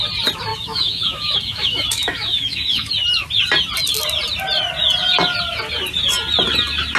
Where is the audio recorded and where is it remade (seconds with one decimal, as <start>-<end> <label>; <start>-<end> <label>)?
0.0-0.5 recorded; 0.5-2.9 remade; 2.9-7.0 recorded